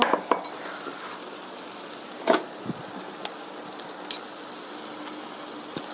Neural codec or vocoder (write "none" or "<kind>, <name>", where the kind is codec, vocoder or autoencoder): none